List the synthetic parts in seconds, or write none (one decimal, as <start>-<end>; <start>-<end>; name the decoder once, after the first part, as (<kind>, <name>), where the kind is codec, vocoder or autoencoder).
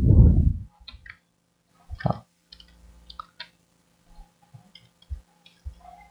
none